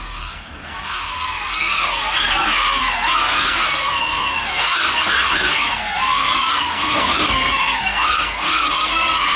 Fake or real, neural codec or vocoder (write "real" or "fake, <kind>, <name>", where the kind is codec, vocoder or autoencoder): fake, codec, SNAC